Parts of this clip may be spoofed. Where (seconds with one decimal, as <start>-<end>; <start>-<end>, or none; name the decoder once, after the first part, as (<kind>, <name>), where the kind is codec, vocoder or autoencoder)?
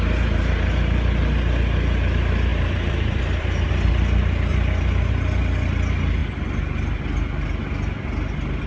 2.5-3.7 (vocoder, BigVGAN v2); 4.5-5.1